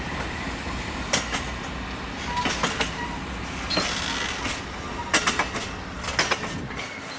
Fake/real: real